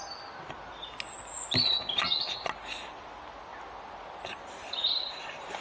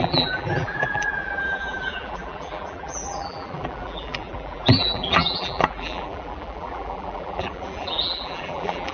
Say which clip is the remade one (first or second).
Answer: second